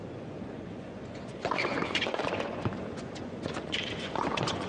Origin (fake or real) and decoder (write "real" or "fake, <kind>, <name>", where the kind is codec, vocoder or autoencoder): fake, vocoder, Vocos